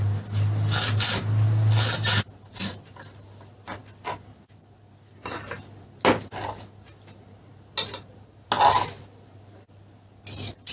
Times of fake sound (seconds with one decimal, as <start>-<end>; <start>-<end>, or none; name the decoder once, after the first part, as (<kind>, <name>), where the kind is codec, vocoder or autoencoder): none